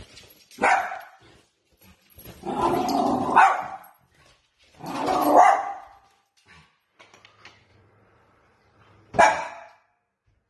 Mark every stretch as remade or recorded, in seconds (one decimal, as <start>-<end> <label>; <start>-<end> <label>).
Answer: 0.0-7.7 recorded; 7.7-9.2 remade; 9.2-10.5 recorded